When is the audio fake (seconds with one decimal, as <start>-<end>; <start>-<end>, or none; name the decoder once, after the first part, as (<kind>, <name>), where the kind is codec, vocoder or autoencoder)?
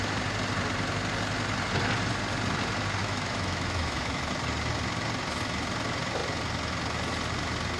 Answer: 3.0-4.3 (autoencoder, DAC-VAE)